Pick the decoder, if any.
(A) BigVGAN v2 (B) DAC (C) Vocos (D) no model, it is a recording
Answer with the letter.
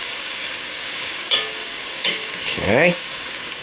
B